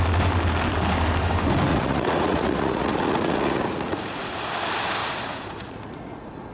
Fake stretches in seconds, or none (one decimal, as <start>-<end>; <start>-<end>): 1.7-4.5; 5.0-6.5